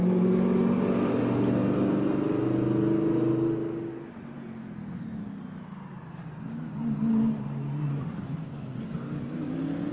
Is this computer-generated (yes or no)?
no